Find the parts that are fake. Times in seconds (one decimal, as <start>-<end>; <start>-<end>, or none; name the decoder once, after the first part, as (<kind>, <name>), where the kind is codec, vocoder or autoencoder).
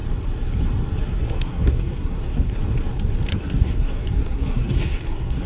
1.1-2.6 (codec, SNAC); 3.3-5.5